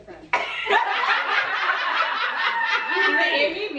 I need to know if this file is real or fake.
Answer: real